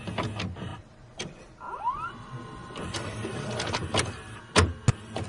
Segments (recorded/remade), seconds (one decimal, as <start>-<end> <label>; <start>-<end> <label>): 0.0-0.7 recorded; 0.7-1.8 remade; 1.8-2.6 recorded; 2.6-4.4 remade; 4.4-5.3 recorded